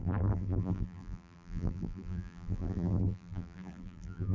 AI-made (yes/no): yes